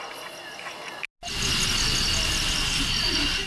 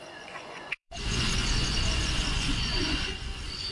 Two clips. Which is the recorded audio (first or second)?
first